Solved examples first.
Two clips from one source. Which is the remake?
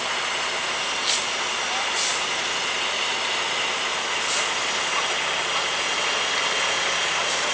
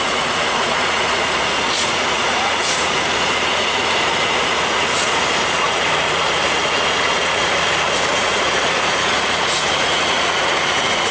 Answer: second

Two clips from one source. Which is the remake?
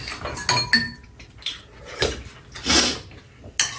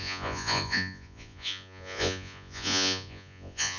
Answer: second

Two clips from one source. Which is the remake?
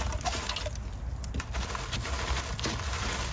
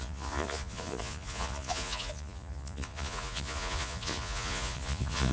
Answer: second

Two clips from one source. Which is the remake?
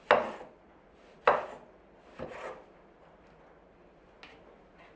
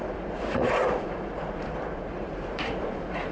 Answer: second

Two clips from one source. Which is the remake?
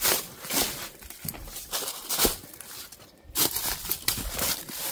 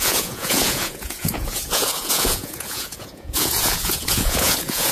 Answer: second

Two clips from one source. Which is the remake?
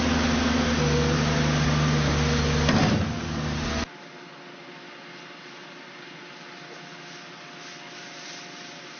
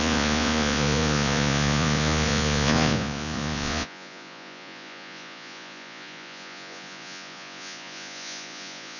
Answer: second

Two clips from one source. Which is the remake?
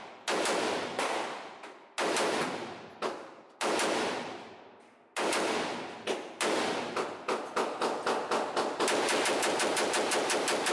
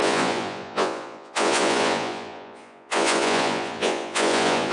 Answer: second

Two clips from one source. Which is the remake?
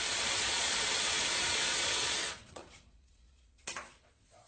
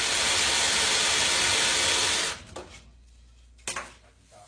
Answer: first